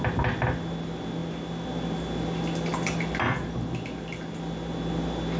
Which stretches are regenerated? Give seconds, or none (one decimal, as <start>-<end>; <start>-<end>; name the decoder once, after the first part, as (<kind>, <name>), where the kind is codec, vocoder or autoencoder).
none